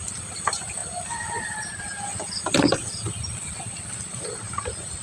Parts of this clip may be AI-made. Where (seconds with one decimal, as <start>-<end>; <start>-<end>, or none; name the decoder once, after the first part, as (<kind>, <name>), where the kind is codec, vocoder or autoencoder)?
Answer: none